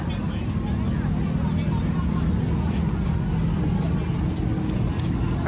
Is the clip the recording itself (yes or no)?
yes